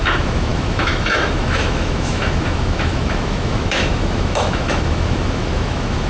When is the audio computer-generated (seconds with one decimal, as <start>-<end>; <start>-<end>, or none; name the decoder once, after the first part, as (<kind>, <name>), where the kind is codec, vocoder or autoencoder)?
0.0-6.1 (autoencoder, DAC-VAE)